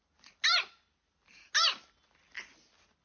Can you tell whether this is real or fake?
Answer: real